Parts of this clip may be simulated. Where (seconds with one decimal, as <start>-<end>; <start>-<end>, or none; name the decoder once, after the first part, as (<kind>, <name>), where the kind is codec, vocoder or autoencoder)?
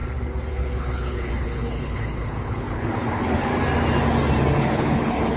0.5-3.5 (codec, HILCodec); 4.6-5.4